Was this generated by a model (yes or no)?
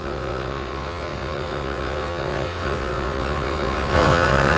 yes